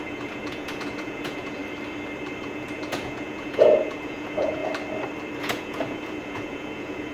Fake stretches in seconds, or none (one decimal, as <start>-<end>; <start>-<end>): 0.0-1.6; 2.4-4.6; 5.4-7.1

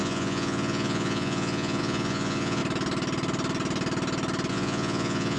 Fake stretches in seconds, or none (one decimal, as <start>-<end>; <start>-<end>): 0.0-2.6; 4.5-5.4

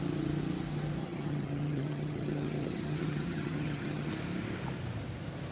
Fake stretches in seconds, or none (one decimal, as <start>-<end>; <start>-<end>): 1.0-4.1